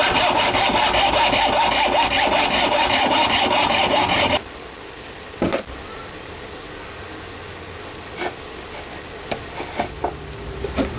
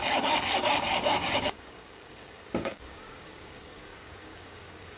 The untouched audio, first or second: first